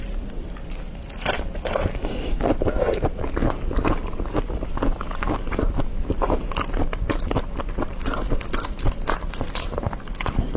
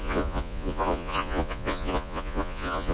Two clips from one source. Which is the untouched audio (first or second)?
first